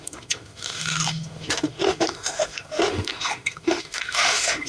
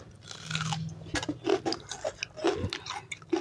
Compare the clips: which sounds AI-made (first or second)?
first